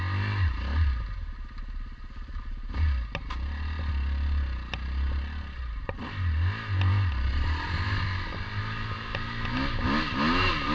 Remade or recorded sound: recorded